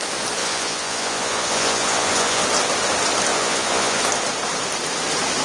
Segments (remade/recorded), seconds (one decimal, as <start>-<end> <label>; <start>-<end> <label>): 0.0-0.4 recorded; 0.4-2.4 remade; 2.4-3.3 recorded; 3.3-4.0 remade; 4.0-5.4 recorded